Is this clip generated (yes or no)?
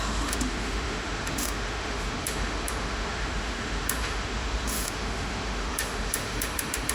yes